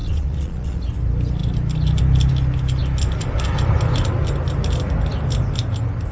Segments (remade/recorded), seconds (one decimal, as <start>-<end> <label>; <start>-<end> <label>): 0.0-0.8 remade; 0.8-6.1 recorded